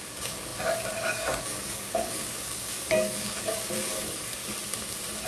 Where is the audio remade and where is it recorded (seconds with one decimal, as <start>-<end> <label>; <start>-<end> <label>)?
0.0-4.4 remade; 4.4-5.3 recorded